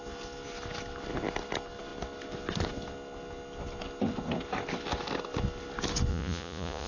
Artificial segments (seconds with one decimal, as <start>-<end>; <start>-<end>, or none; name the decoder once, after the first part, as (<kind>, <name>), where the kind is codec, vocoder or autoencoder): 6.1-6.9 (vocoder, Vocos)